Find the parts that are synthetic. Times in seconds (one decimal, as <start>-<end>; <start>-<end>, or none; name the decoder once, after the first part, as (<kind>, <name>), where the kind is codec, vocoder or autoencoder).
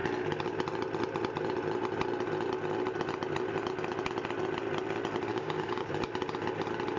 5.3-5.9 (codec, DAC)